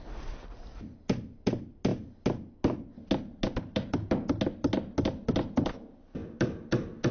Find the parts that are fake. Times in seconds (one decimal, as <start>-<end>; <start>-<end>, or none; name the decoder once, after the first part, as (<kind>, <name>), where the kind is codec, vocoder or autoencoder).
none